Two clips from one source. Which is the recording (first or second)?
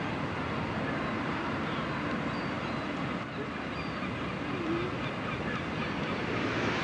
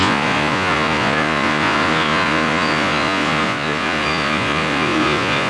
first